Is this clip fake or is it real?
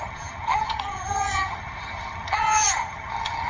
fake